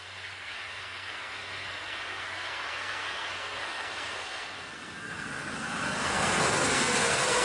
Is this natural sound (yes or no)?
no